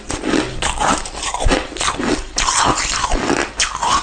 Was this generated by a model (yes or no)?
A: no